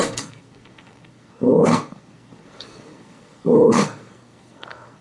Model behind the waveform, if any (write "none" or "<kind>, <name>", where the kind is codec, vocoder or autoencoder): codec, SNAC